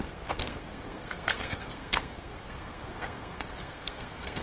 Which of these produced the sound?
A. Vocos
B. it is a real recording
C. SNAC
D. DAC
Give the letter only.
C